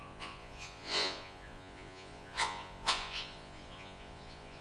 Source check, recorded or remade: remade